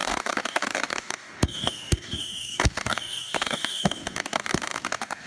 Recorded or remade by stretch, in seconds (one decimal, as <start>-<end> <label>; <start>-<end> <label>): 0.0-5.3 remade